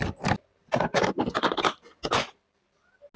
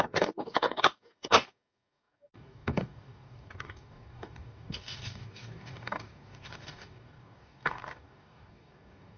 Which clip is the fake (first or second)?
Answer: second